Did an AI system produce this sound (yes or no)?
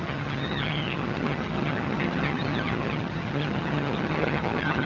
yes